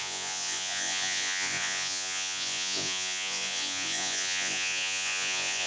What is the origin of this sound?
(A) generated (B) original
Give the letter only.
A